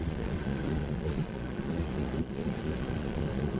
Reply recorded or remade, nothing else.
remade